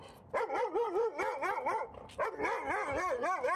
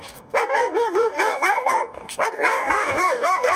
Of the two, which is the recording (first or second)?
first